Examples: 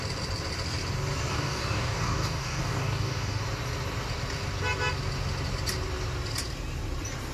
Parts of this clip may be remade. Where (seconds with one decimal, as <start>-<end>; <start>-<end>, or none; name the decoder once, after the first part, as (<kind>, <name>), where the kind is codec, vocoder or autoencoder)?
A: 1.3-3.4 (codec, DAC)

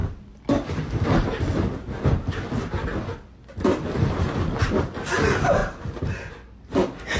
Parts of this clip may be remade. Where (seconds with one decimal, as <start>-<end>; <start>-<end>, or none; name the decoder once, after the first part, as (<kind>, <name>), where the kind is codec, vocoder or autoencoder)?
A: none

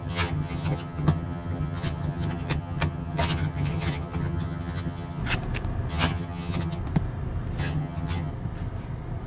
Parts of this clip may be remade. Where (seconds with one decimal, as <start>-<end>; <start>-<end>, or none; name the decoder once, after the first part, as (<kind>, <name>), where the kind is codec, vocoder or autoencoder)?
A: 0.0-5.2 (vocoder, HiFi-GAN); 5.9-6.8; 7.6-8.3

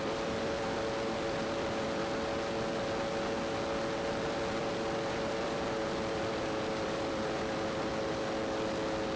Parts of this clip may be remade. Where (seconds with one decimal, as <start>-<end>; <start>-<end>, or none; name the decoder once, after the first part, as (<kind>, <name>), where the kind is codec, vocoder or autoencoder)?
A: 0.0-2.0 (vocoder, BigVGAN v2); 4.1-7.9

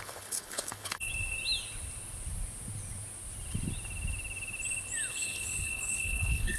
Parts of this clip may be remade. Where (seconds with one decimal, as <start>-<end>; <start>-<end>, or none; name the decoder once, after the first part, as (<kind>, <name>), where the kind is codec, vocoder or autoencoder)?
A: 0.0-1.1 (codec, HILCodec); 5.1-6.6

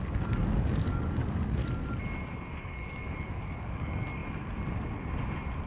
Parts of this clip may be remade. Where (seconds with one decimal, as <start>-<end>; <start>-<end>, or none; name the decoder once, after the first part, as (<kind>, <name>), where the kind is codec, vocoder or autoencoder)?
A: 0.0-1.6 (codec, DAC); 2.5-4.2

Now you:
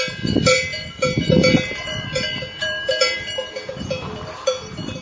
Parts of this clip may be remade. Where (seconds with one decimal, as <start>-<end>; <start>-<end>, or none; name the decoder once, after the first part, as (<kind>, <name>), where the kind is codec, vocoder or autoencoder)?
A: 0.0-5.0 (vocoder, BigVGAN v2)